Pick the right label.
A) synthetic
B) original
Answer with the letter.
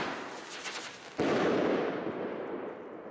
B